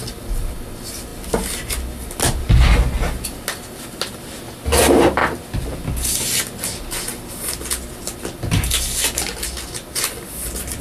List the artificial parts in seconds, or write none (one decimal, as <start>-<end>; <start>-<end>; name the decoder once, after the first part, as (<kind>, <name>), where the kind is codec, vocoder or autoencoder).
none